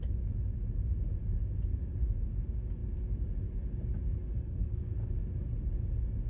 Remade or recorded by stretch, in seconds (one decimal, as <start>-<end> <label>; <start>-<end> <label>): 0.0-4.3 recorded; 4.3-4.9 remade; 4.9-6.3 recorded